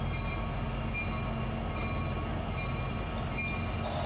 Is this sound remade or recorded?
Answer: recorded